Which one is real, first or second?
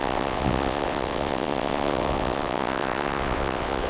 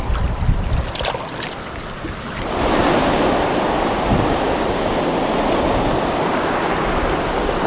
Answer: second